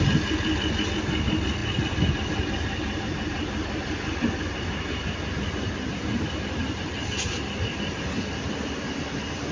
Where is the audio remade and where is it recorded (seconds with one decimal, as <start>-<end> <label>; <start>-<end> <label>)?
0.0-9.5 recorded